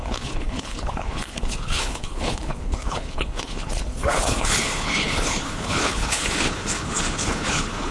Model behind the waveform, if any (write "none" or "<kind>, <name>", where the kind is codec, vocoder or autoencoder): codec, HILCodec